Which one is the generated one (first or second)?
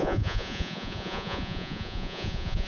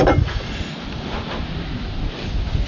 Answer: first